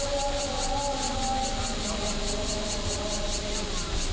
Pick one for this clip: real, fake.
real